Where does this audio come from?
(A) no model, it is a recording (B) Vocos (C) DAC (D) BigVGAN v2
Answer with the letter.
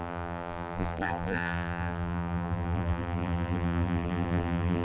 D